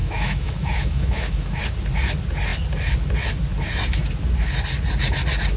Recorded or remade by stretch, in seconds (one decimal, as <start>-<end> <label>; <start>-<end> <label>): 0.0-1.6 remade; 1.6-5.6 recorded